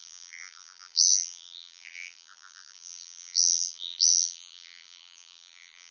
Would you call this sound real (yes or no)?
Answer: no